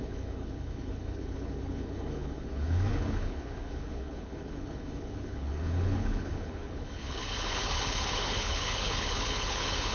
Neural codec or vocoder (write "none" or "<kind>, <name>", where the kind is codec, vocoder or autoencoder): codec, HILCodec